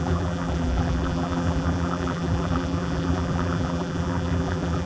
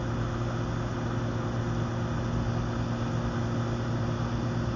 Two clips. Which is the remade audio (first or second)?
first